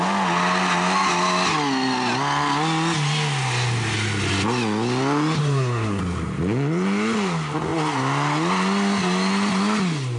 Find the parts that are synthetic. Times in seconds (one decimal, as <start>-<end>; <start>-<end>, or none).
5.4-6.0